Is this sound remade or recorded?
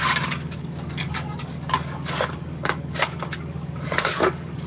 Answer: remade